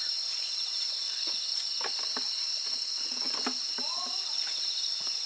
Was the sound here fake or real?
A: real